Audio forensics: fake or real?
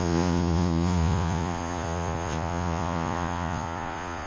fake